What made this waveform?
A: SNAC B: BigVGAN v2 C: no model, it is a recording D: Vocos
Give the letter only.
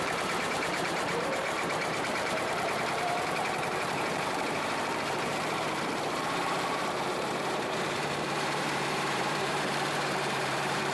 B